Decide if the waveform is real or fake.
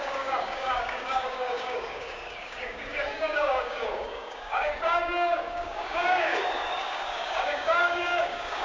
fake